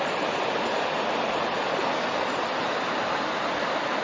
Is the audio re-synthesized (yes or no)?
no